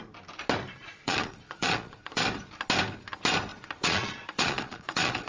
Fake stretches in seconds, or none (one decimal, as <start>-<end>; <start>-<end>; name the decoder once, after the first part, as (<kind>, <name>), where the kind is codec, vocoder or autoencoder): 0.8-2.2 (vocoder, Vocos); 3.5-5.3